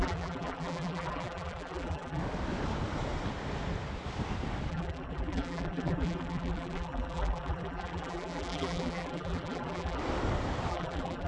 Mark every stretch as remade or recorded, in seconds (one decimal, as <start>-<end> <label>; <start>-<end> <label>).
0.0-2.2 remade; 2.2-4.7 recorded; 4.7-10.0 remade; 10.0-10.7 recorded; 10.7-11.3 remade